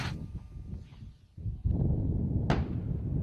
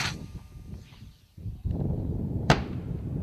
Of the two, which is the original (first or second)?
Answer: first